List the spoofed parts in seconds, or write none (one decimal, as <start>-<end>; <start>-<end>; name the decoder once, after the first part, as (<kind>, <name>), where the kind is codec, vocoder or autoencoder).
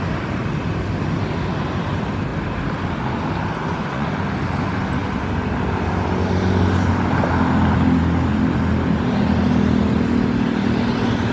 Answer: 3.6-4.1 (vocoder, Vocos)